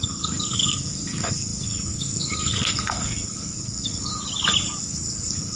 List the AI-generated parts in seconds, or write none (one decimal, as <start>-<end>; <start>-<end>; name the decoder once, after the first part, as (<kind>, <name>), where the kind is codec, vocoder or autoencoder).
0.0-4.1 (codec, SNAC); 4.8-5.6